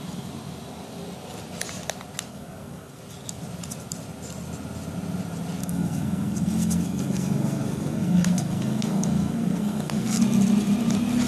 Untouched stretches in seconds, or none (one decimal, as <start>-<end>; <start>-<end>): 0.0-2.3; 3.0-5.6; 10.2-11.3

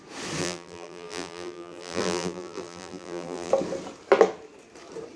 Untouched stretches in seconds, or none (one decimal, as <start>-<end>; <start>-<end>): 0.0-0.4; 3.5-5.2

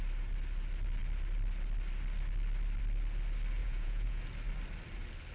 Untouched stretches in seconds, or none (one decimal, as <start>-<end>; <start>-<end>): 0.0-3.6; 4.2-5.3

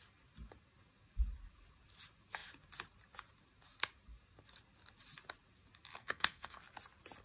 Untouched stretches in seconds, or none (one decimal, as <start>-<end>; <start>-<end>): 0.0-6.0; 6.6-7.2

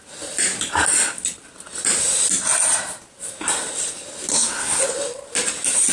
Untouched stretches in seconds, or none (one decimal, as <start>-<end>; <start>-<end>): 0.0-4.3; 4.8-5.9